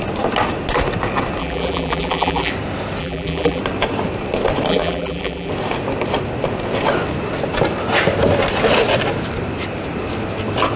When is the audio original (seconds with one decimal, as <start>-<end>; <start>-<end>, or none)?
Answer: 0.0-1.4; 2.5-3.0; 3.6-4.7; 5.5-10.8